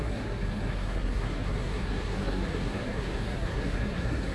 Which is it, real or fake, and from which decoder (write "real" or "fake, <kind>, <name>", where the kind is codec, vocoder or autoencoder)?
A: fake, codec, SNAC